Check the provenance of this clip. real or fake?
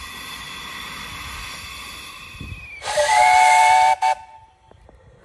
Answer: real